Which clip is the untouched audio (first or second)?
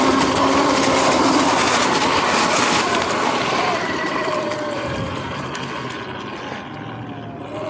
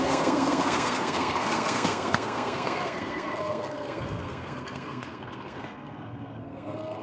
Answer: first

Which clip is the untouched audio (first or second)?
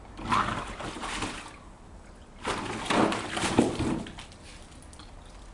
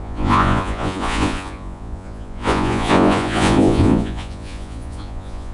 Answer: first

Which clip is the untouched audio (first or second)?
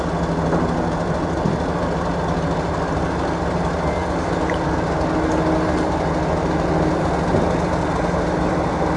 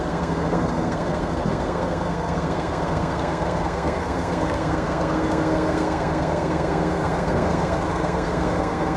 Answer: first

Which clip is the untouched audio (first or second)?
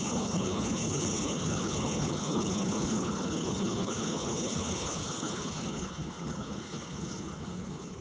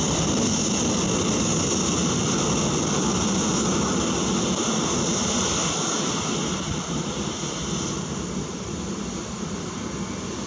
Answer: second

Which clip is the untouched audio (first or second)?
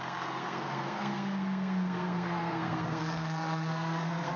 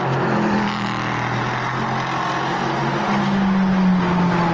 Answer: second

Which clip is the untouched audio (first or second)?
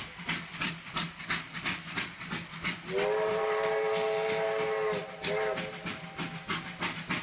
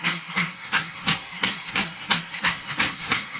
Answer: first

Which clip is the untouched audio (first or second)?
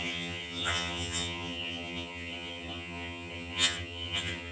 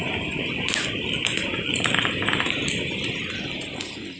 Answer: second